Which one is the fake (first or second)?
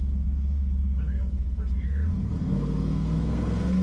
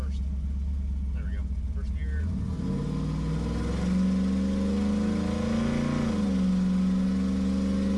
first